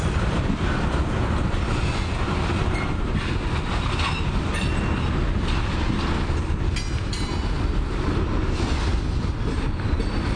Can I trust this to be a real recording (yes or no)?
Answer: yes